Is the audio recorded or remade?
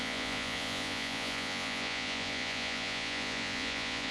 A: remade